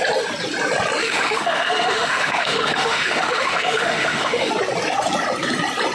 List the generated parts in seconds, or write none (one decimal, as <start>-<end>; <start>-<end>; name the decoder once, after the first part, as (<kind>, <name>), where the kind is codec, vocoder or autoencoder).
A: 1.0-4.5 (autoencoder, DAC-VAE)